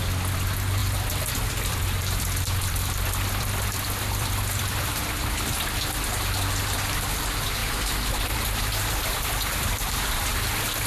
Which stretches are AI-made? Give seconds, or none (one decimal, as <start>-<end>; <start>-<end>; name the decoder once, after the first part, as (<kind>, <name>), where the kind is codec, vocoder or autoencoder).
0.8-4.9 (vocoder, BigVGAN v2); 7.6-10.0